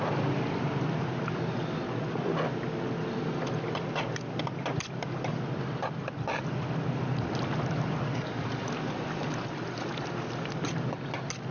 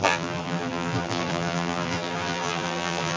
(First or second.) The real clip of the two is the first